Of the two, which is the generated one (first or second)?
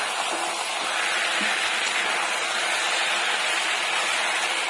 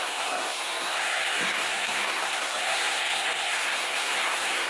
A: second